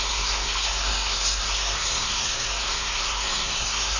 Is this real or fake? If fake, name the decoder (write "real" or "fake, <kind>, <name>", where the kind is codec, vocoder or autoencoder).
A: fake, codec, SNAC